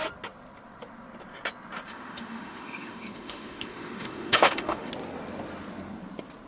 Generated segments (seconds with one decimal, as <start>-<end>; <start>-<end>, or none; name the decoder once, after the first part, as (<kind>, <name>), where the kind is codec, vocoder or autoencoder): 1.9-4.9 (autoencoder, DAC-VAE)